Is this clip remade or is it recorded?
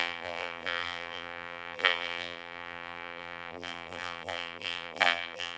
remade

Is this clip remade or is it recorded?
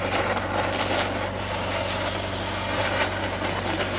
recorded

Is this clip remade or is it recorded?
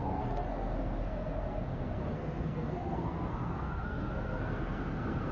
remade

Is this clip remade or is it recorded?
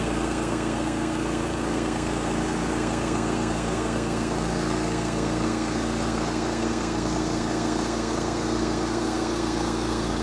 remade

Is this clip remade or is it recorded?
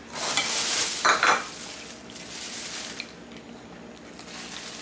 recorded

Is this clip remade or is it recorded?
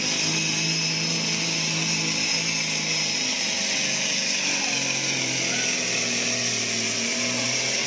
recorded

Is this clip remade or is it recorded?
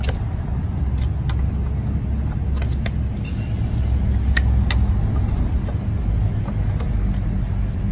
recorded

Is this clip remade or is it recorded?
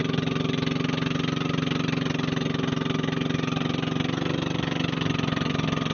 recorded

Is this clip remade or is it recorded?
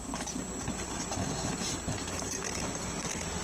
recorded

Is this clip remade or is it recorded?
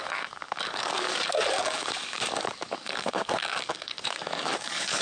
remade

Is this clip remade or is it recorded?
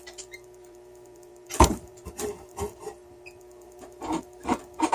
remade